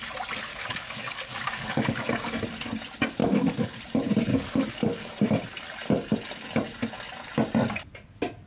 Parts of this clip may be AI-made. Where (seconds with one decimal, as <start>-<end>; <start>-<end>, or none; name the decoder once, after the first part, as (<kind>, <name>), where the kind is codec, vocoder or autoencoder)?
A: 0.5-2.0 (codec, DAC); 3.2-3.7; 4.3-5.1